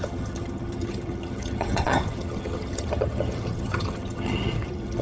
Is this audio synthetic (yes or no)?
yes